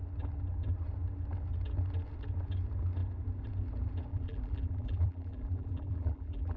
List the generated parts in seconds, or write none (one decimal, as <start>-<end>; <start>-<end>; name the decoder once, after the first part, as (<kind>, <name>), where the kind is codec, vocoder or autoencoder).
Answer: 4.1-6.6 (vocoder, BigVGAN v2)